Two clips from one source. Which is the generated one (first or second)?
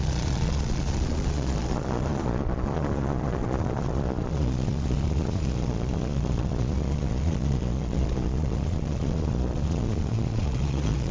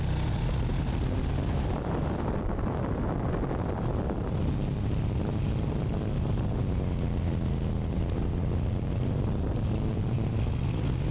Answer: first